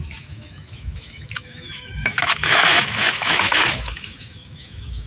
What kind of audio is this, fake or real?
fake